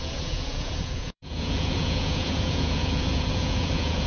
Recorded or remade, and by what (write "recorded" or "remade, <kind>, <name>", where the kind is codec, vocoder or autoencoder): remade, vocoder, Vocos